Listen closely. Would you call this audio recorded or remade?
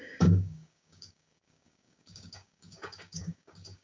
remade